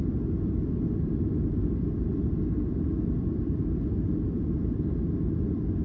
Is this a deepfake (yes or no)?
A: yes